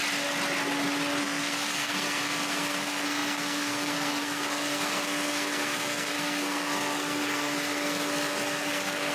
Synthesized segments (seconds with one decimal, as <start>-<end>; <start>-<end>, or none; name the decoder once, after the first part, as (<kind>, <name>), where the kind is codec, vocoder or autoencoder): 1.2-9.1 (codec, SNAC)